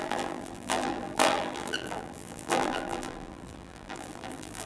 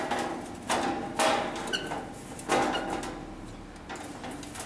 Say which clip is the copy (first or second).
first